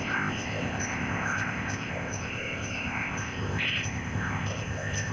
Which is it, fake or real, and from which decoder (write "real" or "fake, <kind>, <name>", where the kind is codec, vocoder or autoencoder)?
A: fake, codec, ZipCodec